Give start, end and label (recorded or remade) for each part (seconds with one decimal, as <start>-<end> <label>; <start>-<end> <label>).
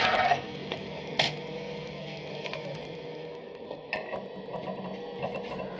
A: 0.0-3.9 remade; 3.9-5.8 recorded